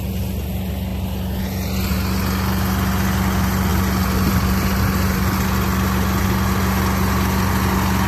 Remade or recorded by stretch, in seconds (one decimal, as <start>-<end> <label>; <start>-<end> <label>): 0.0-8.1 recorded

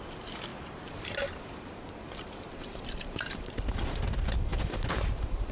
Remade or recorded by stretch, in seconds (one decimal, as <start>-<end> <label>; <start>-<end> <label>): 0.0-0.5 recorded; 0.5-3.7 remade; 3.7-4.5 recorded; 4.5-5.5 remade

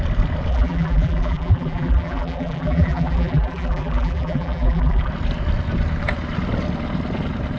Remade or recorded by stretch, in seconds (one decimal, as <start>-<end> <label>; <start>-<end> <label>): 0.0-0.5 recorded; 0.5-5.1 remade; 5.1-7.6 recorded

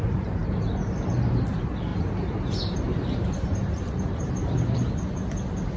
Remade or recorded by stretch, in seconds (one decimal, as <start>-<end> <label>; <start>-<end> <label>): 0.0-1.9 recorded; 1.9-4.3 remade; 4.3-5.8 recorded

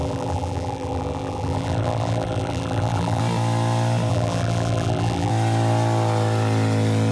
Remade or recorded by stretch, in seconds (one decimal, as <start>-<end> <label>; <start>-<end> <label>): 0.0-3.2 remade; 3.2-4.1 recorded; 4.1-5.3 remade; 5.3-7.1 recorded

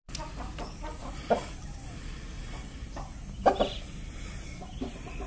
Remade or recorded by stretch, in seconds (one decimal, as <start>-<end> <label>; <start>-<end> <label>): 0.0-5.3 recorded

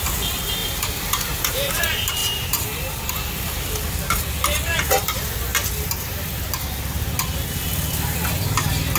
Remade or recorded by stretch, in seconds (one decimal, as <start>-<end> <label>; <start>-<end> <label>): 0.0-0.6 recorded; 0.6-1.7 remade; 1.7-2.2 recorded; 2.2-3.1 remade; 3.1-9.0 recorded